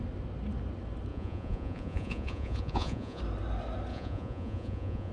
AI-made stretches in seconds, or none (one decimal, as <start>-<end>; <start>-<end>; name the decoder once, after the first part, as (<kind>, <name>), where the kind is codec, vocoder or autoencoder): 1.1-3.2 (vocoder, Vocos); 3.9-5.1